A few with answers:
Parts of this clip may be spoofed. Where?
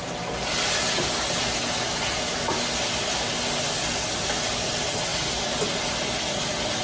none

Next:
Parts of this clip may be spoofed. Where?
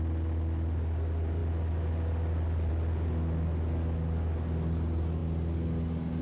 none